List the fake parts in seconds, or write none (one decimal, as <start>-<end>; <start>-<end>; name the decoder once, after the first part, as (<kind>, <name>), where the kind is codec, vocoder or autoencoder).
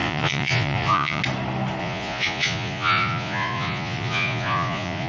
0.0-1.2 (vocoder, Vocos); 1.8-5.1